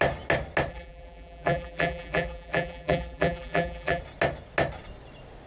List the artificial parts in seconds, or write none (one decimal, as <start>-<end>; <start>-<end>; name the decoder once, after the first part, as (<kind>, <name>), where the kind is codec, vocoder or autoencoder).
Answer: 0.7-4.0 (vocoder, BigVGAN v2)